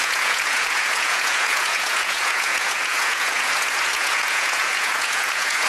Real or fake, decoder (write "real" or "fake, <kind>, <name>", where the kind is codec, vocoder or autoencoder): fake, vocoder, Vocos